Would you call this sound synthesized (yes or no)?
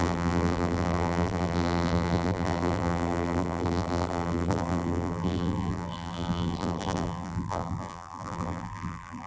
yes